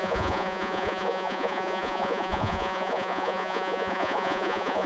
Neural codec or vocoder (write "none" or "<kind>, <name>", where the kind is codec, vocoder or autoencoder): vocoder, Vocos